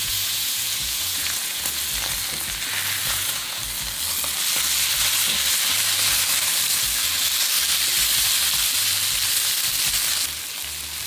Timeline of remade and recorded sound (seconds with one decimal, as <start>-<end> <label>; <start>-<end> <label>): 0.0-1.8 remade; 1.8-3.0 recorded; 3.0-3.6 remade; 3.6-11.1 recorded